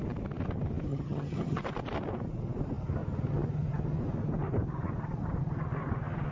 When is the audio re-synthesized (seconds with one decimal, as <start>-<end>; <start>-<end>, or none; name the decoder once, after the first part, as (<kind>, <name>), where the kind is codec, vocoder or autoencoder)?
0.9-1.6 (vocoder, HiFi-GAN)